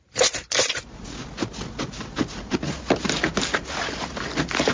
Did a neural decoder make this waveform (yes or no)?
no